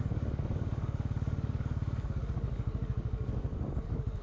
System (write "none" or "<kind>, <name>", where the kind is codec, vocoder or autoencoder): codec, DAC